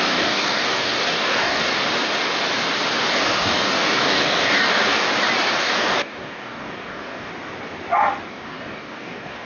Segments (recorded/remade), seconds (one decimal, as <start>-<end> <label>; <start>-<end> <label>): 0.0-1.7 remade; 1.7-3.1 recorded; 3.1-5.1 remade; 5.1-5.6 recorded; 5.6-7.3 remade; 7.3-8.3 recorded; 8.3-9.4 remade